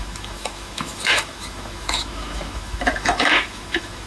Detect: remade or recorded remade